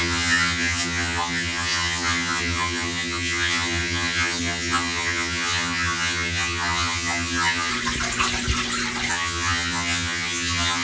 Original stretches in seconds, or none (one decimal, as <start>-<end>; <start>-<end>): 7.7-9.1